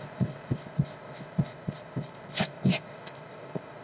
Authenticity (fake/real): fake